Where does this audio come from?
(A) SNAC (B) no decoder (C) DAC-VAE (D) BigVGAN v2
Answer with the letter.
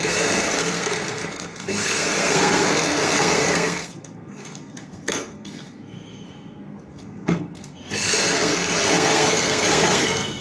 A